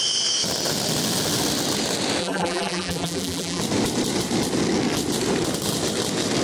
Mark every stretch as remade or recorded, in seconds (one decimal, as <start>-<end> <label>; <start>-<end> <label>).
0.0-2.2 recorded; 2.2-3.6 remade; 3.6-6.4 recorded